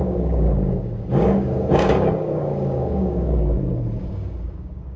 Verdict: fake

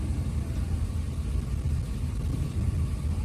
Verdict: real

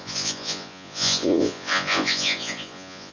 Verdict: fake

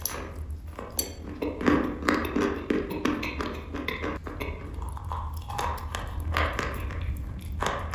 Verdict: real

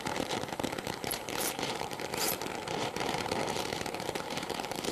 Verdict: fake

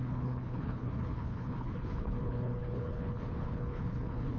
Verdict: fake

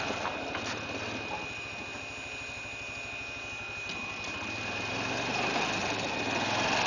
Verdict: real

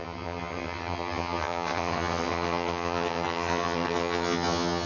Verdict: fake